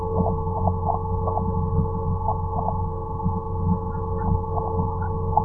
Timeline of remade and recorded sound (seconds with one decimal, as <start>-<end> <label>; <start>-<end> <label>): 0.0-5.4 recorded